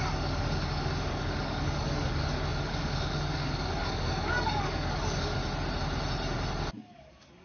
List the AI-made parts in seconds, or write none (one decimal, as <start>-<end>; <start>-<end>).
0.0-5.4; 6.7-7.4